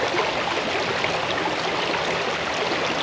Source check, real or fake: real